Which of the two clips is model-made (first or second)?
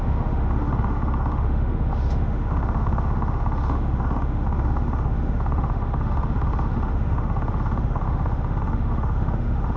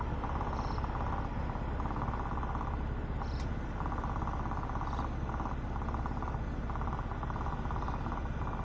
first